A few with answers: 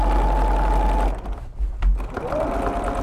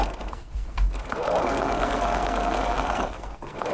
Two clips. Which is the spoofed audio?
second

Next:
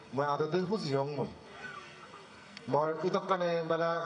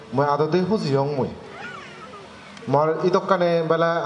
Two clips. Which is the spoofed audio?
first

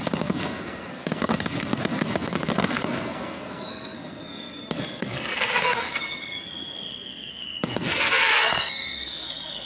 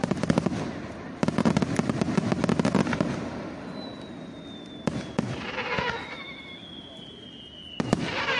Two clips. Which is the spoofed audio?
first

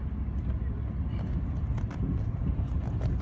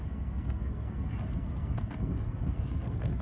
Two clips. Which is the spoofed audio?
second